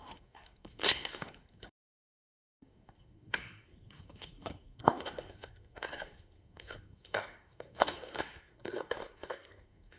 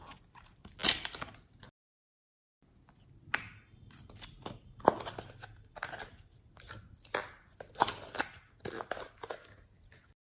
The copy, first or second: first